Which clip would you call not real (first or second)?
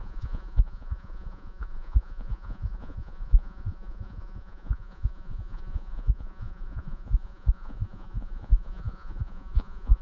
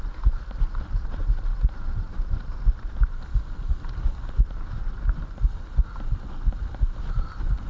first